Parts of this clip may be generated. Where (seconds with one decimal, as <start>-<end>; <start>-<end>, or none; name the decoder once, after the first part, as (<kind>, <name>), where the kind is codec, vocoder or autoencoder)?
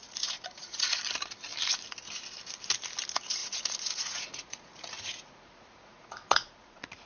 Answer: 0.0-1.0 (vocoder, Vocos); 3.4-7.1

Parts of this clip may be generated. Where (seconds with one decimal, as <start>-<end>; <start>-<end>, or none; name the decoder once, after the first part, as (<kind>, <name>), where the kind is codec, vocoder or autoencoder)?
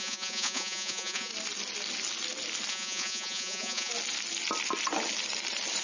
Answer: 0.0-1.3 (vocoder, Vocos); 2.7-3.9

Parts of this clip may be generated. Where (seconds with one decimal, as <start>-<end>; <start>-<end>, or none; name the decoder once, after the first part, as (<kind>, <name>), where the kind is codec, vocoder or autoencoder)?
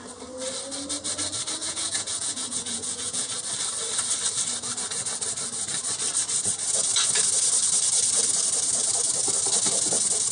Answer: 1.6-3.4 (vocoder, Vocos)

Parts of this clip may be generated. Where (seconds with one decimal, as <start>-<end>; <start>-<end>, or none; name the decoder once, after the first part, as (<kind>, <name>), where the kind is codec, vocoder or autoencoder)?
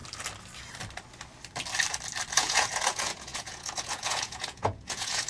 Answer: 2.3-5.3 (vocoder, Vocos)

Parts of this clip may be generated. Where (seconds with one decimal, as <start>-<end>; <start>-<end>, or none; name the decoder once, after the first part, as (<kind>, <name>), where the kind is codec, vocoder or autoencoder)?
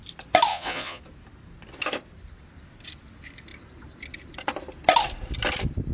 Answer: 0.5-1.0 (vocoder, Vocos)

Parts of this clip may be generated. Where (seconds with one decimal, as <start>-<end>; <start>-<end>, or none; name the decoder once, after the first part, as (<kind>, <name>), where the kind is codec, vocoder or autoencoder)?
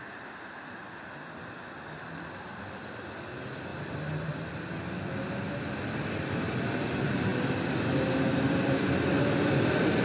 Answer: none